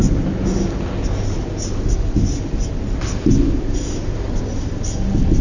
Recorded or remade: recorded